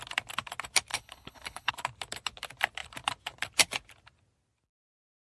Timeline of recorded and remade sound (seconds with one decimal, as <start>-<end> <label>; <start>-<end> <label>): 0.0-0.9 recorded; 0.9-1.7 remade; 1.7-5.2 recorded